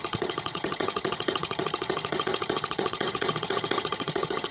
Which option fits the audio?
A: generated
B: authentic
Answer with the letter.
A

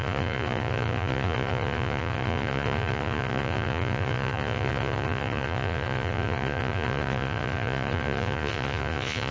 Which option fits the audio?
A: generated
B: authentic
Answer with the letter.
A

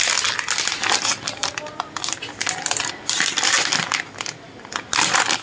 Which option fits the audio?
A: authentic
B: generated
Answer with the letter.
A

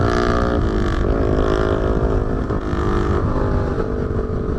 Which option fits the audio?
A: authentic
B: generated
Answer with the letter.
A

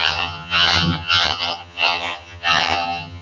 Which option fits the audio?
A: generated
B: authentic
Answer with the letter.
A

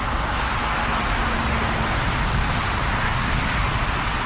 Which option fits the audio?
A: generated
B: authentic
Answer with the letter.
B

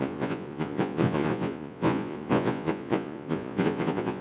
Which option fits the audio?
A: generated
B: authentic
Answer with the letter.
A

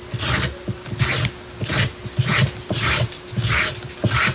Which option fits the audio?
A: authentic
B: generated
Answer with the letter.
A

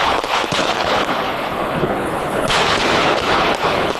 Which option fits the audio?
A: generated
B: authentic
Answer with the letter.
A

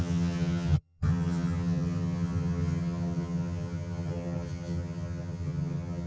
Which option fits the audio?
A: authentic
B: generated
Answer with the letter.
B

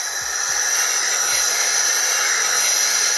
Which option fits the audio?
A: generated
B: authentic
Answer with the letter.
B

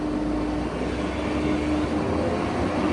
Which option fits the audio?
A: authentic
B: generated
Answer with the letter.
A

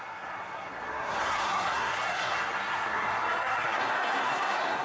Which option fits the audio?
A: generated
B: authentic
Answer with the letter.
A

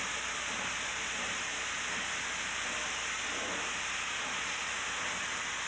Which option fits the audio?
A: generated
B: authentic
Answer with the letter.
B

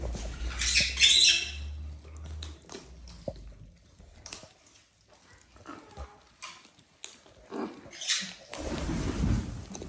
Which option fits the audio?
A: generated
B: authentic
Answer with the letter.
B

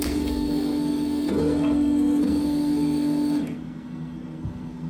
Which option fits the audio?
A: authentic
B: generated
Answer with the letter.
B